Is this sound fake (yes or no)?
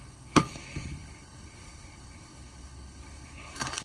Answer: yes